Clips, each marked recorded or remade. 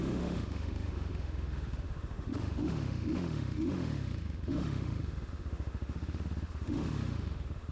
remade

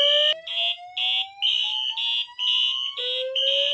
recorded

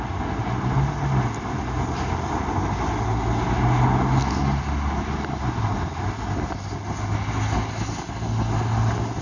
recorded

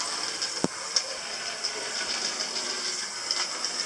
recorded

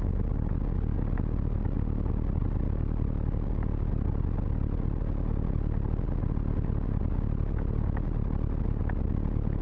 recorded